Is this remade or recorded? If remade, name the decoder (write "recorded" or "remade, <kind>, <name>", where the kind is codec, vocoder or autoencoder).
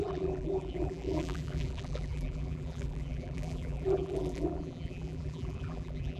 remade, vocoder, BigVGAN v2